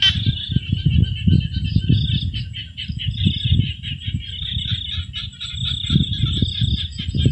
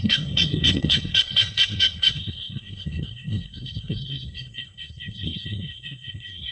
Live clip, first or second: first